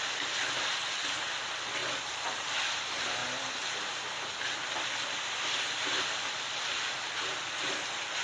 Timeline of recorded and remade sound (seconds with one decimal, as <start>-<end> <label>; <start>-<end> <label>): 0.0-8.2 recorded